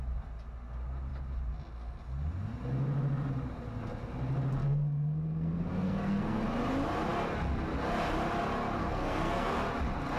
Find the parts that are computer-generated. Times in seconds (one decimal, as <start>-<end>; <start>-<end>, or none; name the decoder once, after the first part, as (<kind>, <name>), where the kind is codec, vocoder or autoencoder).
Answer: 4.6-6.4 (codec, SNAC); 8.8-9.5